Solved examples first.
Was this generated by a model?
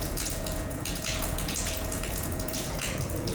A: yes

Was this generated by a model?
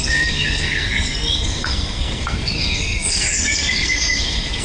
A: yes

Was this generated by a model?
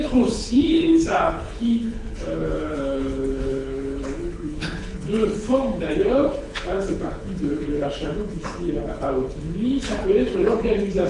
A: yes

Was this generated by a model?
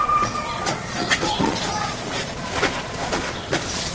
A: yes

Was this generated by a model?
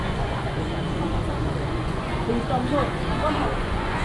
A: yes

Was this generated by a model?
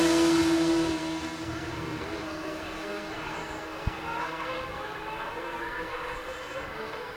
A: yes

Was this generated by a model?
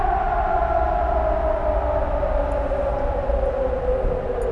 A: no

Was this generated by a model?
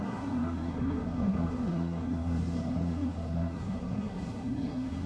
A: yes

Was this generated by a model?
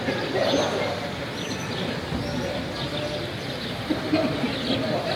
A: no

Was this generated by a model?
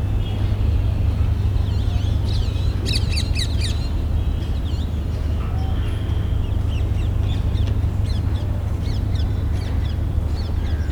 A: no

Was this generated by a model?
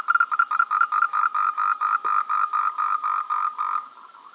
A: no